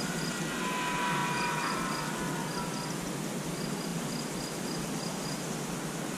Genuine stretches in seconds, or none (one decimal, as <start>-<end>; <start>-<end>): 0.0-6.2